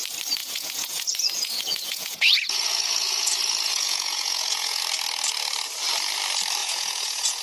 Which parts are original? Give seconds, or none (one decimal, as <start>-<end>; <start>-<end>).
0.0-0.4; 4.8-6.6